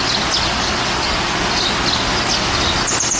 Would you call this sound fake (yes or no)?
no